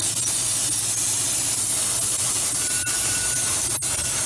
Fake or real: real